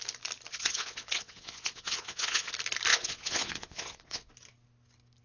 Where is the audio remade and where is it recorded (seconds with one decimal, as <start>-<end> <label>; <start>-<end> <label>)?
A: 0.0-0.5 recorded; 0.5-2.5 remade; 2.5-2.9 recorded; 2.9-4.3 remade; 4.3-5.2 recorded